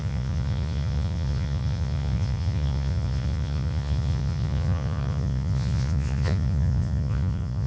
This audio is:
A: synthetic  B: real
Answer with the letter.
A